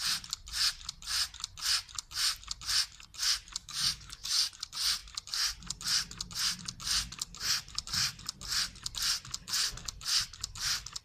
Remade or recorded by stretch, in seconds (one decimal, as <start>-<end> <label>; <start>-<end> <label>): 0.0-3.6 recorded; 3.6-4.5 remade; 4.5-11.0 recorded